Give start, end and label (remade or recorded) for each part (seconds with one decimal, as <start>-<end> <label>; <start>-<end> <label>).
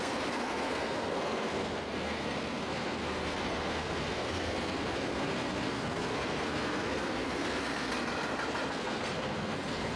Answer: 0.0-7.9 remade; 7.9-8.7 recorded; 8.7-10.0 remade